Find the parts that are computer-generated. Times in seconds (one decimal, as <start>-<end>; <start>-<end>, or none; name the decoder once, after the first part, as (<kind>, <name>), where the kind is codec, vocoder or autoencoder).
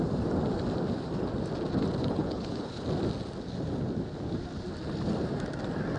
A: 2.0-2.8 (codec, HILCodec)